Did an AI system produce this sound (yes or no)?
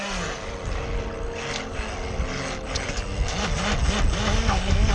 no